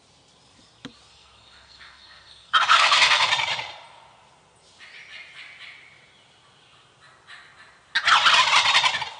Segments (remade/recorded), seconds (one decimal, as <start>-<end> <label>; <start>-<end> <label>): 0.0-1.1 recorded; 1.1-3.3 remade; 3.3-9.2 recorded